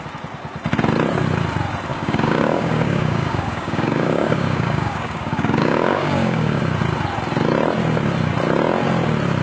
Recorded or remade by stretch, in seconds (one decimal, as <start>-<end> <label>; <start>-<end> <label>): 0.0-1.9 recorded; 1.9-6.6 remade; 6.6-9.4 recorded